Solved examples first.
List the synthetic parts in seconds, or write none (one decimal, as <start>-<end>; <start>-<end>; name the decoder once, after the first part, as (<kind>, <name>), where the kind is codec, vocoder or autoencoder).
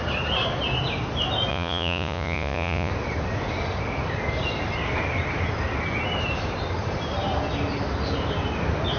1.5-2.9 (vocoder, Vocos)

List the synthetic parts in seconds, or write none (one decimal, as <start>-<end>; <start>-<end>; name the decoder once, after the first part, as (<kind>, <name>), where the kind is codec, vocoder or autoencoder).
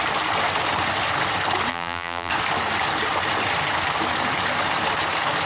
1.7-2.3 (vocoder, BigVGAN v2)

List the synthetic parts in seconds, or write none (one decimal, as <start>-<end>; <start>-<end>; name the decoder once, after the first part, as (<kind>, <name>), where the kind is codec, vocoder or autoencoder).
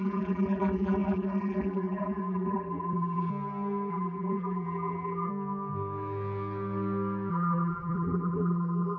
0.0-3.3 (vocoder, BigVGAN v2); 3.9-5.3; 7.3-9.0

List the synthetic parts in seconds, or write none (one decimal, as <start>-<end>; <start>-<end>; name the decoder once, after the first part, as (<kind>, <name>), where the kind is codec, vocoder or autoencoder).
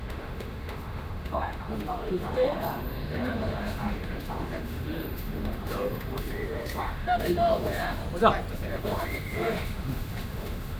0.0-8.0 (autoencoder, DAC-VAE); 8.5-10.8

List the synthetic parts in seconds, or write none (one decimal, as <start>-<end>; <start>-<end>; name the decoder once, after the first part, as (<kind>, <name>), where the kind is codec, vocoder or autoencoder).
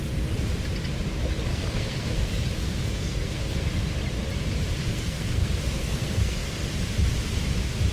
1.5-3.7 (codec, SNAC); 4.9-6.7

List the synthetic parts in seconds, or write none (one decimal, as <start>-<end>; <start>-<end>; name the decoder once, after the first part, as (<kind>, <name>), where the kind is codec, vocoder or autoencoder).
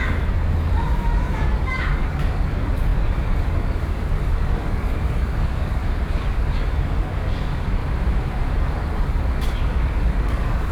0.0-5.8 (codec, DAC); 6.3-7.8; 8.5-10.7